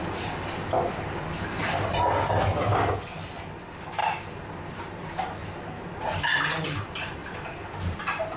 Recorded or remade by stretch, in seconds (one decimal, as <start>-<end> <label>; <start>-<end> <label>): 0.0-8.4 recorded